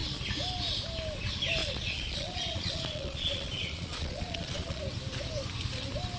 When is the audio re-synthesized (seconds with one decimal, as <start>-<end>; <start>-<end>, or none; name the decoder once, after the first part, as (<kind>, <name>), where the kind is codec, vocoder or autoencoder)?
1.6-4.8 (vocoder, Vocos)